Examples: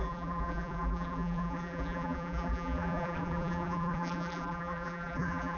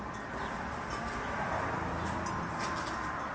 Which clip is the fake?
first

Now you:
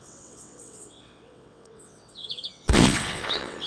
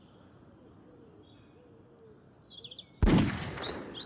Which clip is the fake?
first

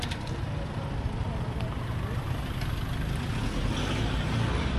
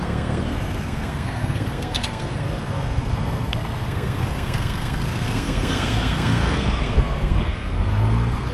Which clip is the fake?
second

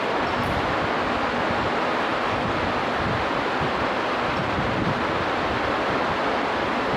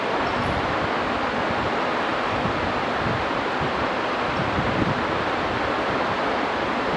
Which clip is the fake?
second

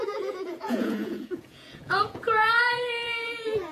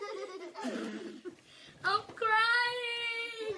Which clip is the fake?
first